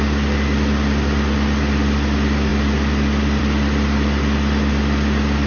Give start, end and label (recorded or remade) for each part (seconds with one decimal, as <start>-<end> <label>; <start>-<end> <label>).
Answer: 0.0-5.5 recorded